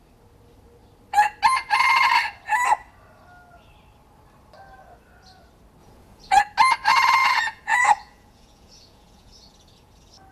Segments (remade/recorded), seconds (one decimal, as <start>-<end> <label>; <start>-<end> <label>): 0.0-5.8 recorded; 5.8-6.4 remade; 6.4-7.2 recorded; 7.2-9.9 remade; 9.9-10.3 recorded